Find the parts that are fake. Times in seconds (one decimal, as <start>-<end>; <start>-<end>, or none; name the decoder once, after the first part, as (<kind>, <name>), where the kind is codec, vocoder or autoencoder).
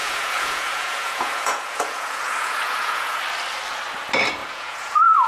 0.0-3.2 (vocoder, Vocos); 4.4-5.3